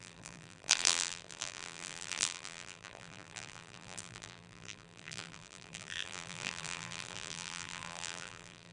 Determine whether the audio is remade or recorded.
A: remade